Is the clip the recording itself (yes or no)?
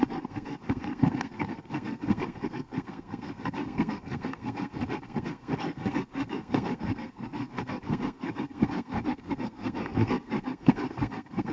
no